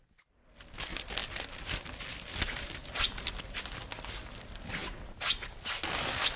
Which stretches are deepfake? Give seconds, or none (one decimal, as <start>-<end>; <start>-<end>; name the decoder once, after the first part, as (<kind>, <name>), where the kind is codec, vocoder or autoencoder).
none